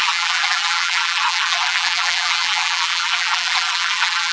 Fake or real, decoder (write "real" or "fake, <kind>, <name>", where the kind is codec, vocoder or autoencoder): fake, vocoder, BigVGAN v2